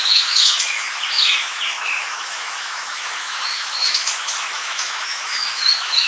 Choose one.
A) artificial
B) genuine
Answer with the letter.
A